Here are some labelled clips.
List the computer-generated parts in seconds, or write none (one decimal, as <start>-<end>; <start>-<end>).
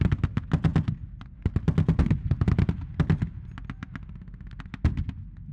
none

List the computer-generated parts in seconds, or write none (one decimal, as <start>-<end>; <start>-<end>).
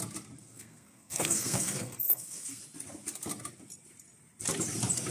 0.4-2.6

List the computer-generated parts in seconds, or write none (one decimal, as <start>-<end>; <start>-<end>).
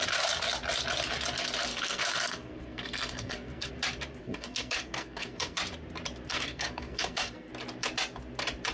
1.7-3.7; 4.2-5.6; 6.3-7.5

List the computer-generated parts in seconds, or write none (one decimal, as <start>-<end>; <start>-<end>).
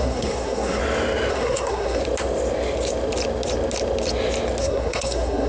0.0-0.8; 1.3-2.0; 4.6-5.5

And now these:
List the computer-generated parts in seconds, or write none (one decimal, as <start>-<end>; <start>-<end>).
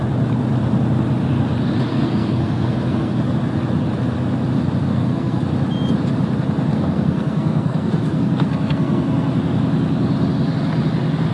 1.9-3.1; 4.8-5.4; 6.7-9.3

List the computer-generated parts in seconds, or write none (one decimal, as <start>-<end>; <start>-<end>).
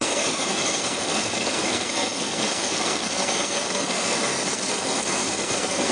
0.0-5.9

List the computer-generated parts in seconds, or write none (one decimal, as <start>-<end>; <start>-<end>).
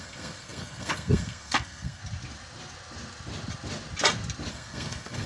0.0-2.0; 4.5-5.3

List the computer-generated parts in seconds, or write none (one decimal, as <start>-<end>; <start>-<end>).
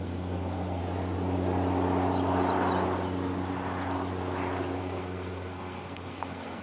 0.0-0.8; 4.8-6.6